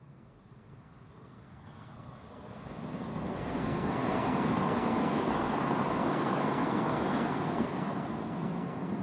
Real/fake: fake